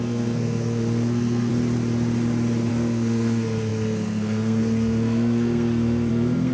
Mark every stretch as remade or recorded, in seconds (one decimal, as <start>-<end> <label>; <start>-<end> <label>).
0.0-1.5 remade; 1.5-2.7 recorded; 2.7-6.5 remade